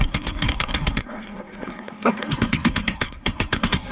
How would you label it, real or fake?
fake